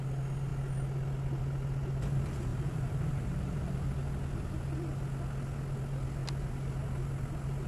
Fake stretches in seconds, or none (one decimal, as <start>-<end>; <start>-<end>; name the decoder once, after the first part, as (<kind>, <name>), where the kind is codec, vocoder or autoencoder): 2.5-3.6 (vocoder, BigVGAN v2)